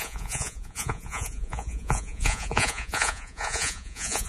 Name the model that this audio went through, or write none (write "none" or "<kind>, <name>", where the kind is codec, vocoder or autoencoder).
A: vocoder, Vocos